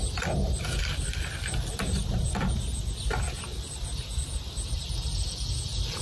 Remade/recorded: recorded